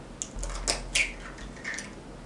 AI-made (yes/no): no